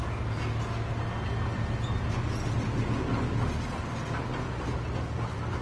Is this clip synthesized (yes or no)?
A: no